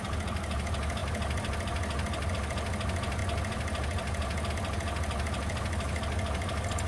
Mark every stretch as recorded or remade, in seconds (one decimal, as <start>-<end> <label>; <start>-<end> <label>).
0.0-6.9 recorded